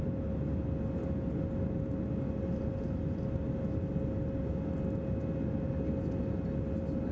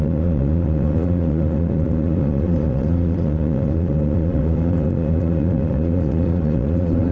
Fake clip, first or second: second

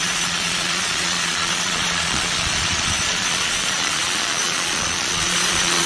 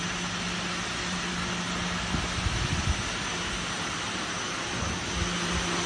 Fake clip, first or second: first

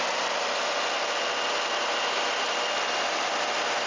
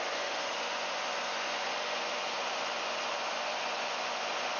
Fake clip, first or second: second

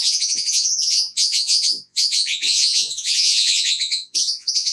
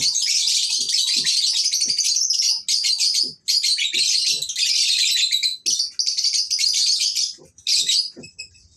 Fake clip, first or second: first